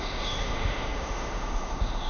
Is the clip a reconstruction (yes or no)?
yes